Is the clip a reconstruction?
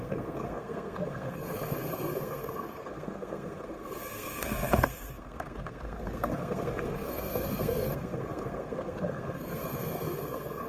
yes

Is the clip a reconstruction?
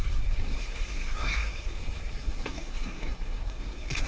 yes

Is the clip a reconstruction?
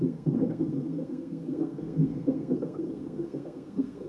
yes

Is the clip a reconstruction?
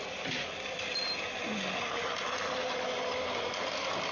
no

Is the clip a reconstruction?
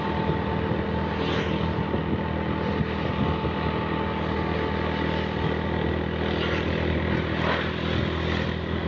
no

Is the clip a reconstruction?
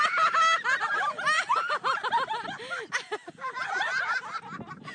no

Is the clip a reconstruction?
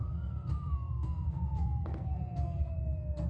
yes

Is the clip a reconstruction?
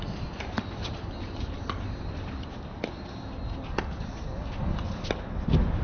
no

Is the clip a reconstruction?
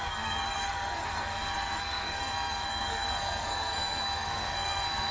yes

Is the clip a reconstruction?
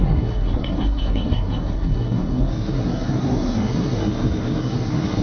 yes